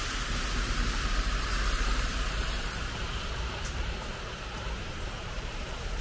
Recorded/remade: remade